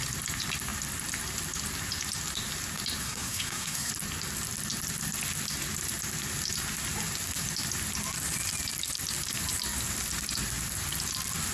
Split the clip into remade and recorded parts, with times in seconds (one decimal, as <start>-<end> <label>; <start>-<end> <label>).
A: 0.0-3.0 recorded; 3.0-3.9 remade; 3.9-11.5 recorded